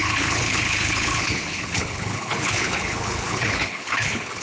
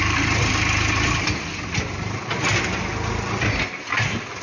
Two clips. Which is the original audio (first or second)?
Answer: second